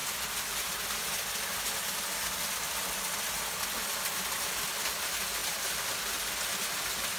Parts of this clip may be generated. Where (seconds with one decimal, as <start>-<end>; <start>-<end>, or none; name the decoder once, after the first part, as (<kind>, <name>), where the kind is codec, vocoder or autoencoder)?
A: none